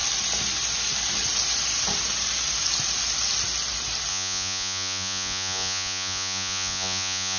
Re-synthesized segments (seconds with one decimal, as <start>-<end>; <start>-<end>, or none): 4.1-7.4